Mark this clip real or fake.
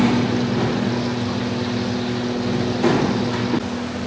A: real